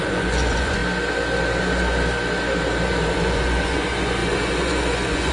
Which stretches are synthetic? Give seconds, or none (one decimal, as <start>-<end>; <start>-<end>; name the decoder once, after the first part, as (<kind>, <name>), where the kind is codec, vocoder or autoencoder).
0.0-0.8 (vocoder, Vocos); 3.1-5.3